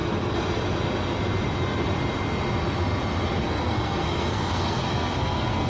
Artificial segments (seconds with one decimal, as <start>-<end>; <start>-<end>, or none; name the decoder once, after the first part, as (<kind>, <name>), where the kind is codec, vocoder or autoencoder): 3.4-5.7 (codec, SNAC)